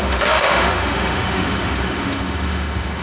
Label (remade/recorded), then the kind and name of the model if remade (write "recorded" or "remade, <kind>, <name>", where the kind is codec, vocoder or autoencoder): remade, autoencoder, DAC-VAE